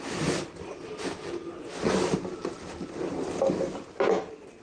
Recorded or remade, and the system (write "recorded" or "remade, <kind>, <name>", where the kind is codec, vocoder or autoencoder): recorded